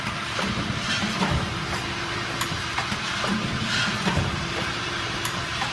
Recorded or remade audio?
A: remade